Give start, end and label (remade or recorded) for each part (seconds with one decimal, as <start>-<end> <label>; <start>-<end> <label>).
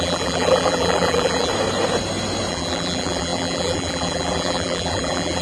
0.0-1.5 remade; 1.5-2.5 recorded; 2.5-5.4 remade